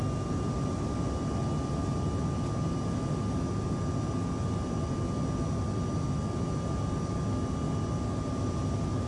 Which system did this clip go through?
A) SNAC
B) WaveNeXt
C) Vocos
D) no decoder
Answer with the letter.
D